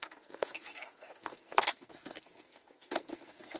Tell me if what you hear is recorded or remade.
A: remade